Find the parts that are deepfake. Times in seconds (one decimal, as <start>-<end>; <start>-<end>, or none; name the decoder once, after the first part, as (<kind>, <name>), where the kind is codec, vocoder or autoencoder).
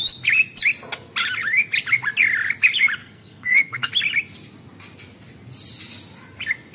3.0-3.9 (codec, SNAC)